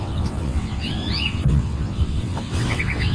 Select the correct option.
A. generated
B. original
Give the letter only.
A